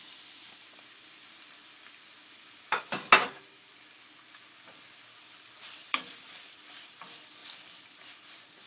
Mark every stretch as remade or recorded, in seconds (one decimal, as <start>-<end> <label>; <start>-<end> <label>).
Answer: 0.0-8.7 recorded